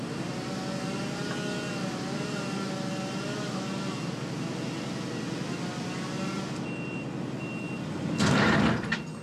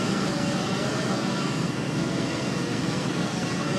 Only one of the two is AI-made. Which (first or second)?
second